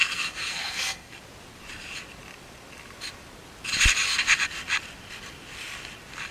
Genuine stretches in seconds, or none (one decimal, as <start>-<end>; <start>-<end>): 1.2-6.3